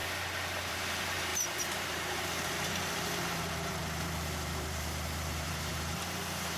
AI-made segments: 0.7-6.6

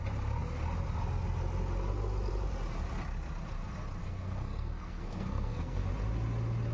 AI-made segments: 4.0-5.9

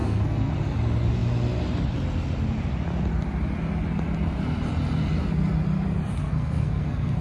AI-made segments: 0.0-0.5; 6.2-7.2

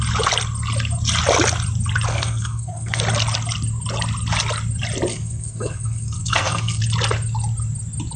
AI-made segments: 2.1-3.0; 5.1-6.8

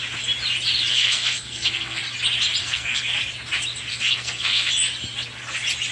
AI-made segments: 0.9-2.0; 2.6-3.2; 3.9-4.7